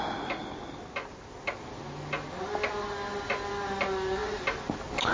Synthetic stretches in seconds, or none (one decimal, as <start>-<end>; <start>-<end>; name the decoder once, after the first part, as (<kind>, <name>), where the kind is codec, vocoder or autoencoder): none